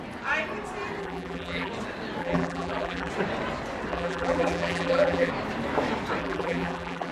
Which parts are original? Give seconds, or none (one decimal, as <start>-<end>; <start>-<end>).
0.0-1.0; 1.7-2.2; 3.1-3.9; 5.3-6.2